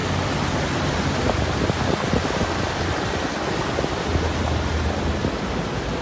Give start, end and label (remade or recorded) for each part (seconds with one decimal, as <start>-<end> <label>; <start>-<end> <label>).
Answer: 0.0-6.0 recorded